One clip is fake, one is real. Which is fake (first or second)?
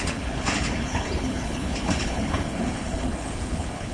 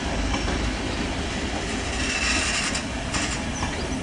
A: first